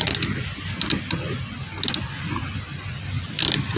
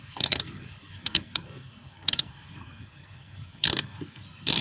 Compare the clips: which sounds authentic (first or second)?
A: first